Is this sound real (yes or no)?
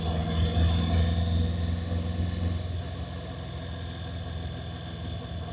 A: yes